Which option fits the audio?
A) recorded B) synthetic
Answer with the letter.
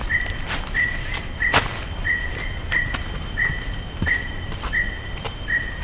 A